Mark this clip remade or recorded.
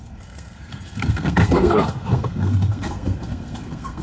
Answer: remade